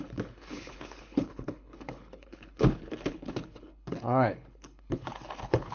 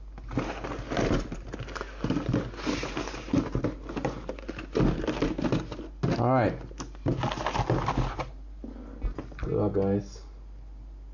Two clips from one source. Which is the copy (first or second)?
first